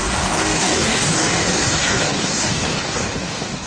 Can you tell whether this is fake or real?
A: fake